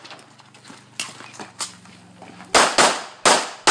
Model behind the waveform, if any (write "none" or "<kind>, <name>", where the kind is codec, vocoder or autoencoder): none